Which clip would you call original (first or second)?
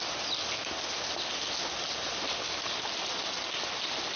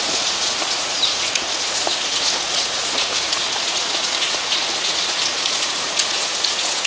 first